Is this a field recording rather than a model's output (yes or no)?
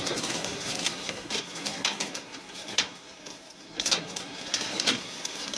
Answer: no